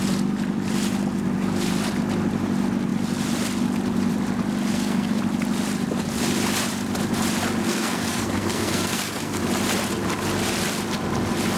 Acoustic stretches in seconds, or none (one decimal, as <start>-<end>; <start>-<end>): 0.0-4.7; 5.2-7.6; 9.4-11.6